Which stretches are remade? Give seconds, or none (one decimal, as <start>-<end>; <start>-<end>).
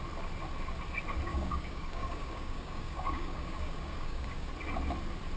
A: 1.3-4.5